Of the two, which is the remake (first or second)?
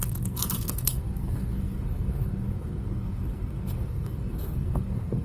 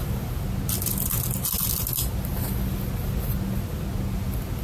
first